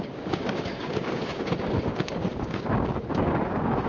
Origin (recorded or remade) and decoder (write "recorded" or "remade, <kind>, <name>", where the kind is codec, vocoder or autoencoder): remade, codec, DAC